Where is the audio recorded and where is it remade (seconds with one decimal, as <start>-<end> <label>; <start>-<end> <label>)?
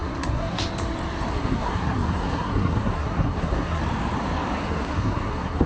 0.0-0.6 remade; 0.6-1.3 recorded; 1.3-3.8 remade; 3.8-4.6 recorded; 4.6-5.7 remade